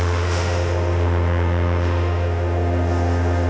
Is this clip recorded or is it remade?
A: remade